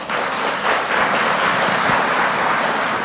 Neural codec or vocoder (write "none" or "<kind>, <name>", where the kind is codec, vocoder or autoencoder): none